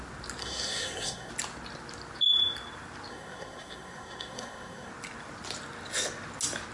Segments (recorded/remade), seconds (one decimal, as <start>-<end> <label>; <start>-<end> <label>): 0.0-0.4 recorded; 0.4-1.3 remade; 1.3-3.1 recorded; 3.1-4.9 remade; 4.9-6.7 recorded